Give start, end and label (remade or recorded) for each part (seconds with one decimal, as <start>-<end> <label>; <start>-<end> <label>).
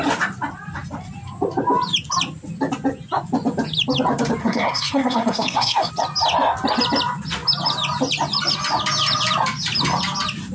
0.0-4.4 recorded; 4.4-5.9 remade; 5.9-10.5 recorded